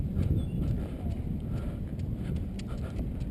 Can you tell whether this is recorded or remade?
recorded